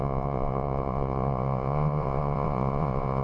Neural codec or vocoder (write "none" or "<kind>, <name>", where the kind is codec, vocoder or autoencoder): vocoder, Vocos